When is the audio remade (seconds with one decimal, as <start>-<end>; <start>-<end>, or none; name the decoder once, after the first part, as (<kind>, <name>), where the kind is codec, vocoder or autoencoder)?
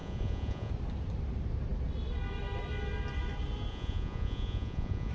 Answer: 0.0-0.7 (vocoder, Vocos); 3.7-5.1